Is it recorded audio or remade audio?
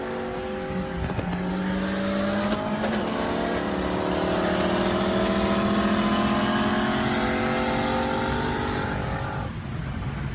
recorded